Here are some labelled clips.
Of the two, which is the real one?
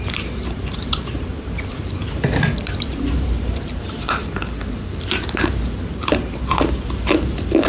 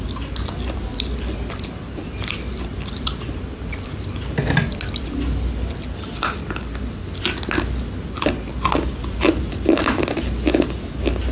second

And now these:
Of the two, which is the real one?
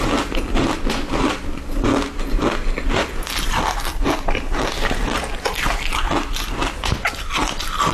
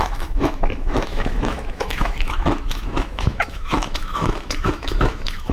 first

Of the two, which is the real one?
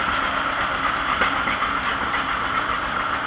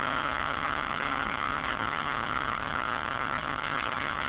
first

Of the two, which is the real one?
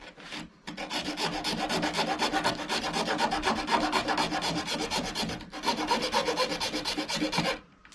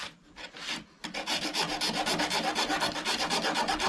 first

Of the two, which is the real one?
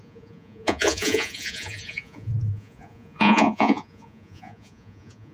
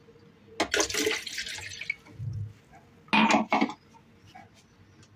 second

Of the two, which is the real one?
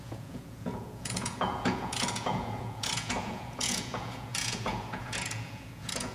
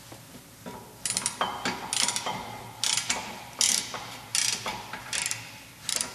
second